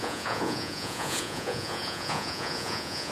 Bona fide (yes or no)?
no